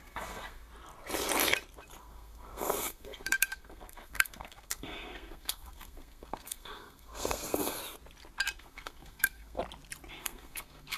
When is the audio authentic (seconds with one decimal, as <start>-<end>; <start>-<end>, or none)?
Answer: 0.7-2.0; 7.8-8.6; 9.6-10.2